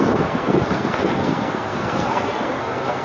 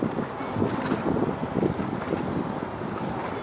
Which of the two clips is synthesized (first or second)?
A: first